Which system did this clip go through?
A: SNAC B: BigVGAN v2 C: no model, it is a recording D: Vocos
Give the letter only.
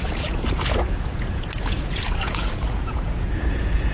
D